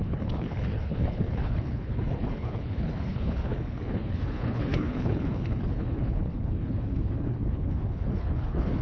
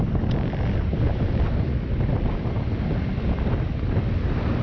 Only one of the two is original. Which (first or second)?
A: second